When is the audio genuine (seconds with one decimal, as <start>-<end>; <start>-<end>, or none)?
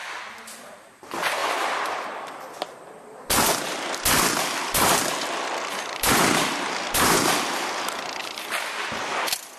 0.0-0.8